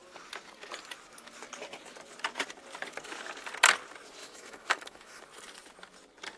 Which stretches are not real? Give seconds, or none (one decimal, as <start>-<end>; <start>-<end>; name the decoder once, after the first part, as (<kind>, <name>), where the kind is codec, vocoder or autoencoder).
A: 4.2-5.2 (autoencoder, DAC-VAE)